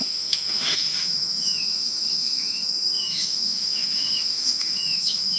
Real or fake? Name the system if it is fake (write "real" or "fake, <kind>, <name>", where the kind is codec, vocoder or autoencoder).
fake, autoencoder, DAC-VAE